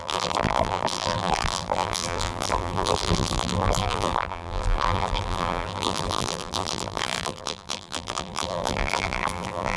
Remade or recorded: remade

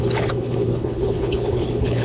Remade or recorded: remade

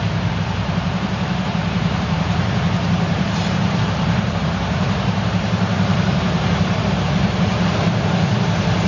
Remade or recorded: remade